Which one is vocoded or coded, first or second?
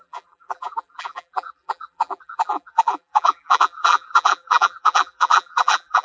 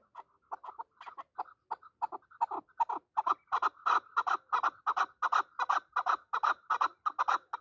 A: first